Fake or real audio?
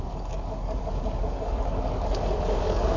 fake